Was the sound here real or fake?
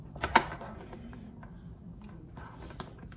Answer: fake